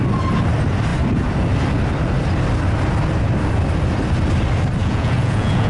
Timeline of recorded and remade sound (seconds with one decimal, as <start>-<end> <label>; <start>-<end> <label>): 0.0-4.8 recorded; 4.8-5.7 remade